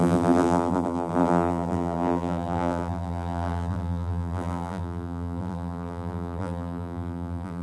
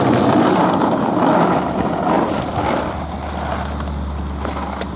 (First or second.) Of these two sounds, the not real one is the first